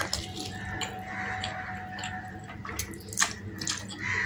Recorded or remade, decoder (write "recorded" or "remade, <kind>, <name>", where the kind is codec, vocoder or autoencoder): recorded